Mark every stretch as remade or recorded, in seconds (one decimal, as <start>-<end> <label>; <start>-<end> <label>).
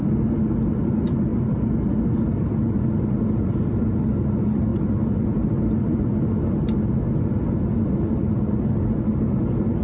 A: 0.0-9.8 recorded